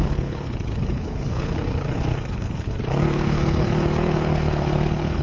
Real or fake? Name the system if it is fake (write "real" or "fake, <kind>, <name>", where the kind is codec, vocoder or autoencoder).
fake, codec, HILCodec